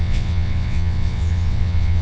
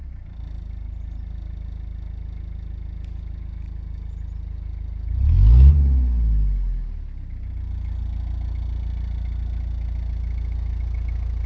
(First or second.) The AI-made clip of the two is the first